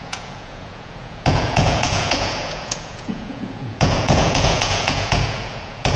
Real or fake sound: fake